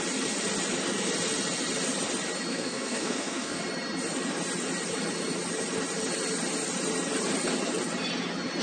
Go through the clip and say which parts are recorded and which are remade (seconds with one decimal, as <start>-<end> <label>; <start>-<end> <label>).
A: 0.0-2.5 recorded; 2.5-3.6 remade; 3.6-8.6 recorded